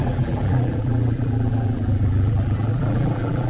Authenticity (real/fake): fake